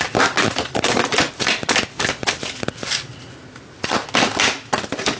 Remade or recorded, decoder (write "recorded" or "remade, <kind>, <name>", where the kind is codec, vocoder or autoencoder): recorded